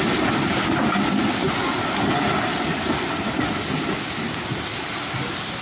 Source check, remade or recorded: recorded